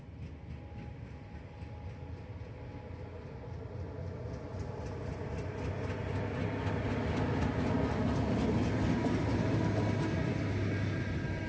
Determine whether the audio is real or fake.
real